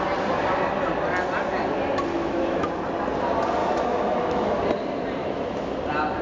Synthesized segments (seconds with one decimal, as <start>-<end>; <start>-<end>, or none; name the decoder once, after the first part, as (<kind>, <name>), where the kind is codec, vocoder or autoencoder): 2.1-2.7 (autoencoder, DAC-VAE); 3.6-4.5; 5.2-5.8